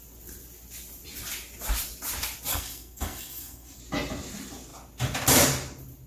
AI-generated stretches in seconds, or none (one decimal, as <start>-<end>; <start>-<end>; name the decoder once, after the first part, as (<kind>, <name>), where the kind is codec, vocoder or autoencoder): 2.5-3.8 (codec, SNAC)